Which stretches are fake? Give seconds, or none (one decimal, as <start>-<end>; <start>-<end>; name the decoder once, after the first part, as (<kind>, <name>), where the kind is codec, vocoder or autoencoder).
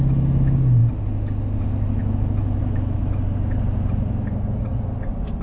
2.0-3.0 (autoencoder, DAC-VAE)